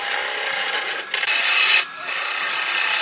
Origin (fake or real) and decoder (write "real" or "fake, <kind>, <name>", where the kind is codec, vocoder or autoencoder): real